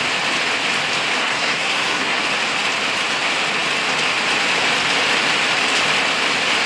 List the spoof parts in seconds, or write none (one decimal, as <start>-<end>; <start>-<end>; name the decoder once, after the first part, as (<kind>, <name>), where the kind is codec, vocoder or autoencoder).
1.2-2.2 (codec, SNAC)